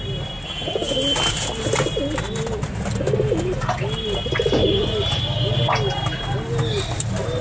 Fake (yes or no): no